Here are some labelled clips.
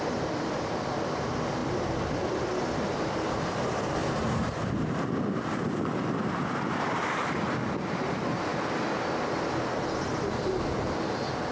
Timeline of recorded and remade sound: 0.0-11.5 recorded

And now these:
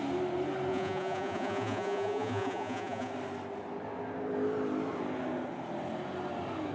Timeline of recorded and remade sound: 0.0-0.7 recorded; 0.7-3.1 remade; 3.1-6.7 recorded

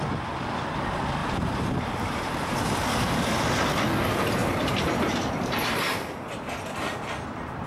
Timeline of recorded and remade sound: 0.0-1.2 recorded; 1.2-2.7 remade; 2.7-4.4 recorded; 4.4-5.8 remade; 5.8-7.7 recorded

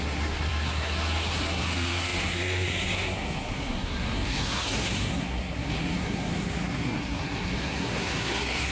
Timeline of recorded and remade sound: 0.0-8.7 remade

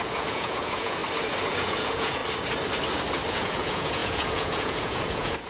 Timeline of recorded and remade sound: 0.0-1.0 remade; 1.0-1.5 recorded; 1.5-2.2 remade; 2.2-3.3 recorded; 3.3-5.5 remade

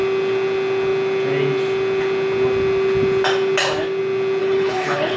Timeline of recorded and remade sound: 0.0-4.4 recorded; 4.4-5.2 remade

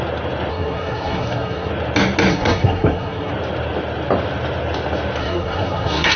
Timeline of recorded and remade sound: 0.0-0.5 recorded; 0.5-1.7 remade; 1.7-2.3 recorded; 2.3-3.3 remade; 3.3-5.2 recorded; 5.2-6.2 remade

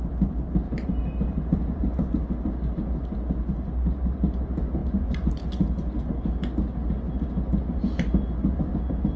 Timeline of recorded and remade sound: 0.0-9.2 recorded